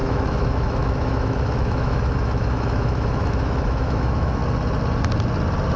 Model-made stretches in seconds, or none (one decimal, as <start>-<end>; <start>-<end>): 0.0-4.4

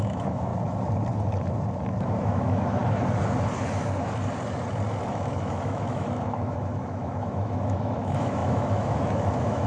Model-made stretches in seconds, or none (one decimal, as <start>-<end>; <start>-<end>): 0.0-0.5; 2.2-2.8; 5.1-9.7

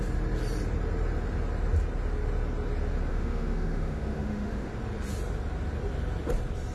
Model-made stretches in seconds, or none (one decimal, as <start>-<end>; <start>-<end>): 3.1-4.7

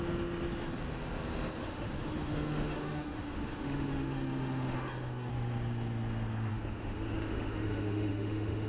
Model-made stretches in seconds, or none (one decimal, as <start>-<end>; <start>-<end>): 1.6-5.3; 6.5-8.7

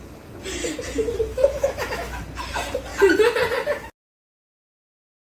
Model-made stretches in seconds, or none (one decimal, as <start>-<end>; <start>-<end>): 1.3-2.2